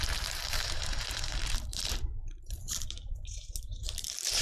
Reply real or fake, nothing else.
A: fake